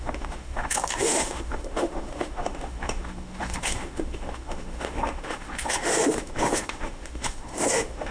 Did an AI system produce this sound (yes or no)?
yes